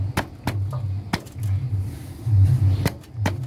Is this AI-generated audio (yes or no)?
no